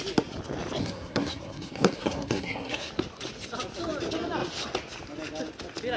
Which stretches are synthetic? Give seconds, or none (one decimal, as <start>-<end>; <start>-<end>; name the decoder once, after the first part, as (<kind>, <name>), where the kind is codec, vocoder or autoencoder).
0.8-2.9 (codec, SNAC)